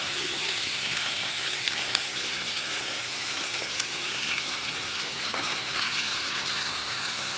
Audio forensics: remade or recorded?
remade